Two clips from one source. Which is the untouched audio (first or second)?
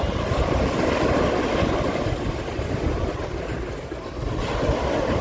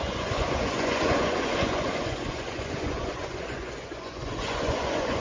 first